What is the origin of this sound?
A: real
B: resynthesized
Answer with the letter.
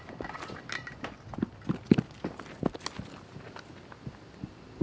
A